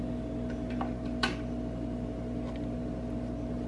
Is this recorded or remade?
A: recorded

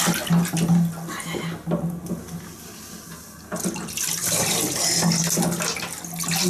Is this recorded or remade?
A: recorded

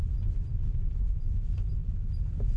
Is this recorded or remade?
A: recorded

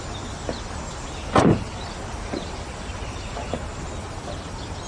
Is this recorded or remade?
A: recorded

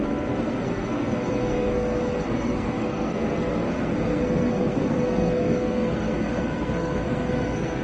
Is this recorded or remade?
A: remade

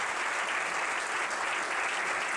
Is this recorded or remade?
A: recorded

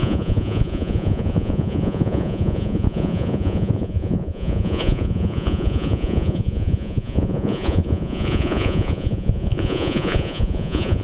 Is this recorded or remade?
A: remade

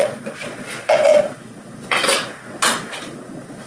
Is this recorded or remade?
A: remade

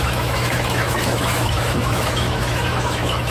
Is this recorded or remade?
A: remade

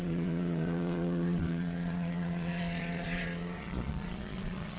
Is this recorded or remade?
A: remade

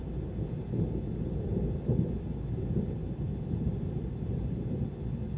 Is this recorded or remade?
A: recorded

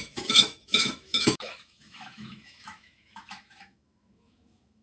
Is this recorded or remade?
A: remade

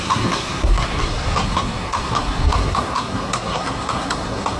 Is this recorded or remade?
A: remade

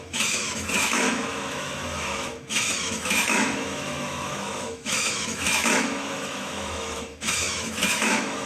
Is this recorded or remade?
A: remade